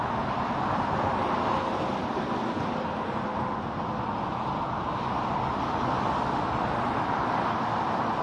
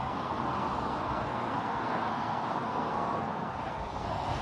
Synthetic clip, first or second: second